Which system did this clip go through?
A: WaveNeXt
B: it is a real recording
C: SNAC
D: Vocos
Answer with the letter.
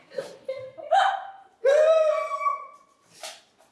B